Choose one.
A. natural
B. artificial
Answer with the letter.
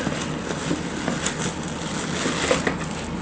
A